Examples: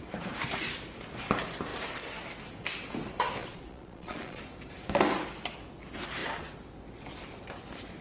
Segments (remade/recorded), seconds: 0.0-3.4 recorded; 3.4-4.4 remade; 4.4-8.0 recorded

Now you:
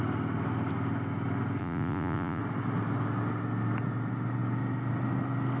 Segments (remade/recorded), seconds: 0.0-1.6 recorded; 1.6-2.4 remade; 2.4-5.6 recorded

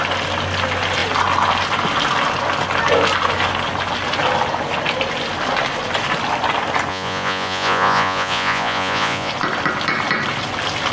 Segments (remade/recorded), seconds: 0.0-6.9 recorded; 6.9-9.3 remade; 9.3-10.9 recorded

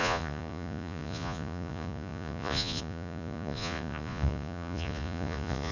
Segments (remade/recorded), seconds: 0.0-5.7 remade

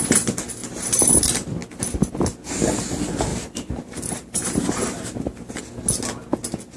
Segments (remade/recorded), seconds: 0.0-0.6 recorded; 0.6-1.2 remade; 1.2-3.3 recorded; 3.3-5.6 remade; 5.6-6.8 recorded